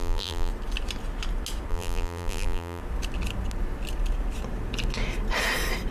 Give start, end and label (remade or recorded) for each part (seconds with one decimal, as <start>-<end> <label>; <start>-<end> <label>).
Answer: 0.0-0.5 remade; 0.5-1.7 recorded; 1.7-2.8 remade; 2.8-5.9 recorded